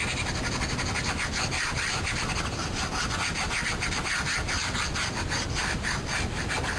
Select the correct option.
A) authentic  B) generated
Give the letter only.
A